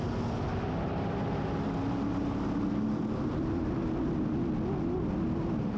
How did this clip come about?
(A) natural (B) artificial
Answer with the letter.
A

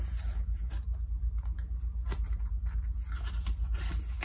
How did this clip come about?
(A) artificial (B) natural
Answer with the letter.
B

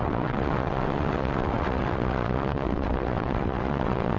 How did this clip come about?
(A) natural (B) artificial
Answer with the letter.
B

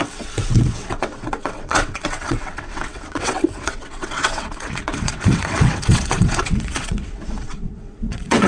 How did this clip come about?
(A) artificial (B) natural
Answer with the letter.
A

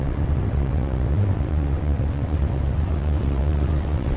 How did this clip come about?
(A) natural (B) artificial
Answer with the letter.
B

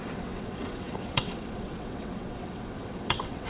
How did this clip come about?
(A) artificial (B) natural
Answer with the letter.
A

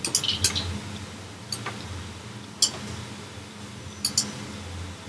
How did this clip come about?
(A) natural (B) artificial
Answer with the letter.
A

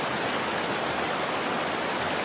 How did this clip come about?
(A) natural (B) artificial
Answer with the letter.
A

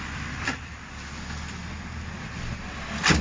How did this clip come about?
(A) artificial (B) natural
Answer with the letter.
B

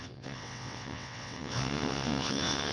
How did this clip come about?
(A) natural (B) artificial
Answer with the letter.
B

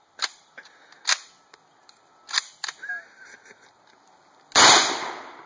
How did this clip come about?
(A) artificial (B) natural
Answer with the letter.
B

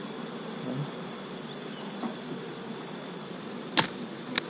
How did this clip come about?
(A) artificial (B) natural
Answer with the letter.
B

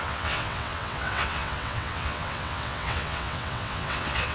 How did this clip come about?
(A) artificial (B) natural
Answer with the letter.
A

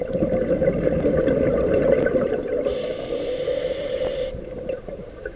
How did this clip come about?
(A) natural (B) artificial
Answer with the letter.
A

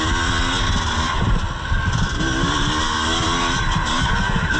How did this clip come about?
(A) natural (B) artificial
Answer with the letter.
A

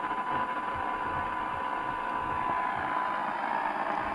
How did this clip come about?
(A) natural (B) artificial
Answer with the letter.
A